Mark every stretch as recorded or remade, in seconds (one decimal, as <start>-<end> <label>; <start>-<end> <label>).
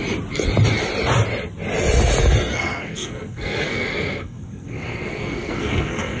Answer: 0.0-2.5 recorded; 2.5-6.2 remade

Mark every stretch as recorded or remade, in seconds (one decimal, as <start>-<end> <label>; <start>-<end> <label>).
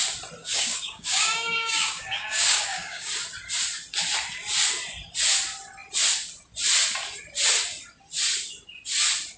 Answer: 0.0-0.4 recorded; 0.4-3.1 remade; 3.1-9.4 recorded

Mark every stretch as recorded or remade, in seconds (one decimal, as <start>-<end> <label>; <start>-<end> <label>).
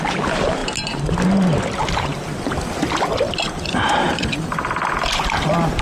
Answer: 0.0-5.8 recorded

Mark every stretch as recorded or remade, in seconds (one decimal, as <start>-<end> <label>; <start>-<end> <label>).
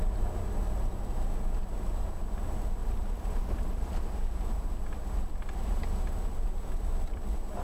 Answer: 0.0-2.8 recorded; 2.8-4.1 remade; 4.1-7.6 recorded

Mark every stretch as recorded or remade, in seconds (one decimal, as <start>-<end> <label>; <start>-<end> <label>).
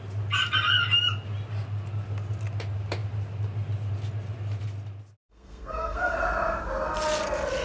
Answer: 0.0-5.2 recorded; 5.2-6.2 remade; 6.2-7.6 recorded